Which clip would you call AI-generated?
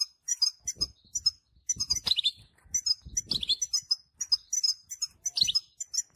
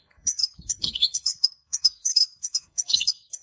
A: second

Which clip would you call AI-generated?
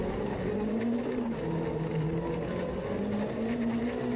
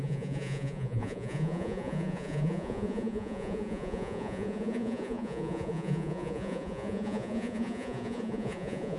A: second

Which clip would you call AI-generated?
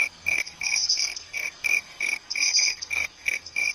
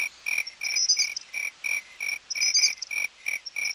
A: first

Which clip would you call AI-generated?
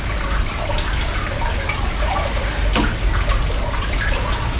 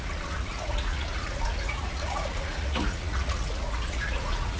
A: second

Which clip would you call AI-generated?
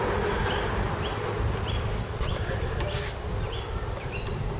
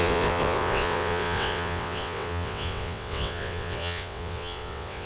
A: second